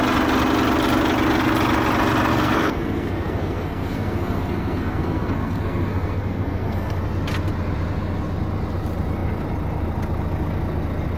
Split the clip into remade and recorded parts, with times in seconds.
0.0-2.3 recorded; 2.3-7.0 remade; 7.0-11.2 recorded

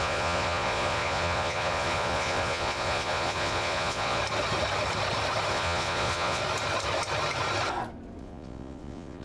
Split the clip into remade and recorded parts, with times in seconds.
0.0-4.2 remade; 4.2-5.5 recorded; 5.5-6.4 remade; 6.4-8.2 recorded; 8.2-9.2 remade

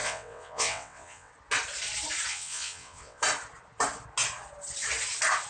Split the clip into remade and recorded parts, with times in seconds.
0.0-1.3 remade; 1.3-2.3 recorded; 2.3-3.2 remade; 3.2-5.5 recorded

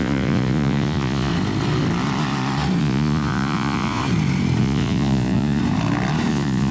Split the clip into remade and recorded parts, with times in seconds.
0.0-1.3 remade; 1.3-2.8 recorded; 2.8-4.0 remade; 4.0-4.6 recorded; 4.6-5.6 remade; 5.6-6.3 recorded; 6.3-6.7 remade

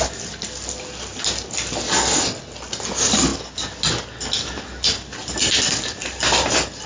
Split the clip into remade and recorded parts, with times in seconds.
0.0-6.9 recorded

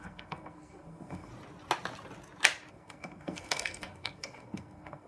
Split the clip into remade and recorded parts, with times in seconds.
0.0-1.3 remade; 1.3-2.7 recorded; 2.7-5.1 remade